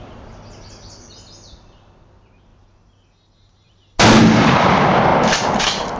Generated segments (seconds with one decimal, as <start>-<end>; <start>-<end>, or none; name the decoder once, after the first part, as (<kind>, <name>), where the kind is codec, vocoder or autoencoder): none